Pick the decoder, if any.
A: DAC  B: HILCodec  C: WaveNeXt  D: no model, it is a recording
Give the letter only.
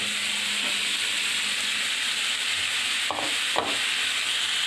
D